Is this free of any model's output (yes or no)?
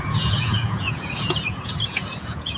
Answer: no